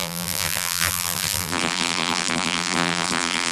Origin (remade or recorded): remade